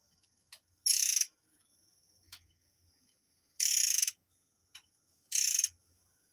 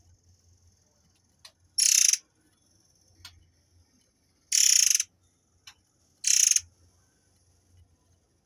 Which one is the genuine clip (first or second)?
second